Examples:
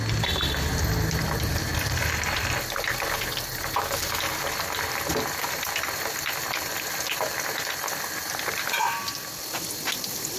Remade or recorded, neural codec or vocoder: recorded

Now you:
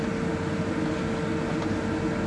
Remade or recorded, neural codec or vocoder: recorded